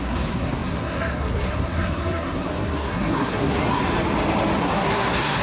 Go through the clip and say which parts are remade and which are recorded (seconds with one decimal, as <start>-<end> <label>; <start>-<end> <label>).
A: 0.0-3.8 remade; 3.8-4.6 recorded; 4.6-5.4 remade